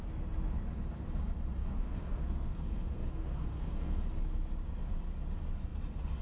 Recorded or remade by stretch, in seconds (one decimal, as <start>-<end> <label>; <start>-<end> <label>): 0.0-1.6 recorded; 1.6-4.0 remade; 4.0-6.2 recorded